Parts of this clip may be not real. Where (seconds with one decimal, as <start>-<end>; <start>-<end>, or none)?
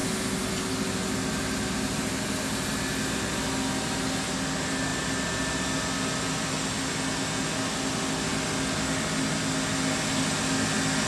none